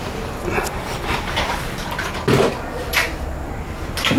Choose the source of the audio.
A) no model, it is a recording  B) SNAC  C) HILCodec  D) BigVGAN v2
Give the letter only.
A